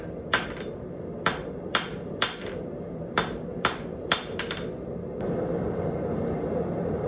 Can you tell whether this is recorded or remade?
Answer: remade